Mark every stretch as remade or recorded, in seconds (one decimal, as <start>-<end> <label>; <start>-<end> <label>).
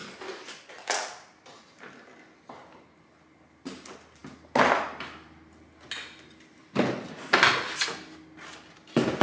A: 0.0-9.2 recorded